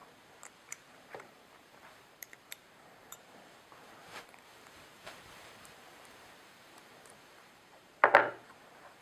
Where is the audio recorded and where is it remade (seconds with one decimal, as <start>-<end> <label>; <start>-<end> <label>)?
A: 0.0-9.0 remade